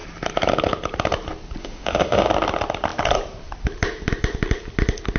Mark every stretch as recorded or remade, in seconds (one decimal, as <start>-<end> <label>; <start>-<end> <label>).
0.0-1.6 recorded; 1.6-2.3 remade; 2.3-5.2 recorded